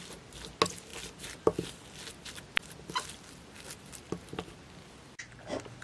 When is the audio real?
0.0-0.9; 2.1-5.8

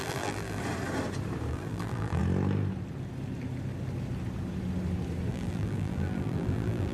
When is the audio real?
0.6-1.5; 2.2-5.3